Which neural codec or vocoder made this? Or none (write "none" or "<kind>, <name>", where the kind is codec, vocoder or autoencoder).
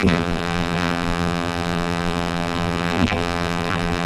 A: vocoder, BigVGAN v2